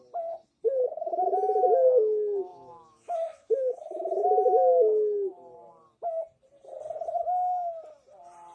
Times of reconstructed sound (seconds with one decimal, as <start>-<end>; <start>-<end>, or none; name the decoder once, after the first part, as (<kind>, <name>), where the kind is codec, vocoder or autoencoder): 2.5-4.2 (autoencoder, DAC-VAE)